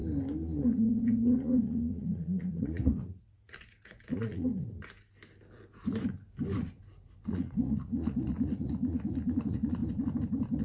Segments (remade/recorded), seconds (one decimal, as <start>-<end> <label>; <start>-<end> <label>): 0.0-0.6 recorded; 0.6-4.5 remade; 4.5-7.3 recorded; 7.3-9.8 remade; 9.8-10.6 recorded